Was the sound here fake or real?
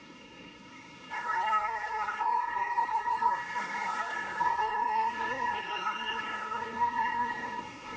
fake